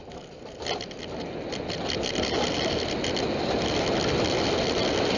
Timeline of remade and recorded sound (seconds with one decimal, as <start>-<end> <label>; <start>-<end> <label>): 0.0-5.2 recorded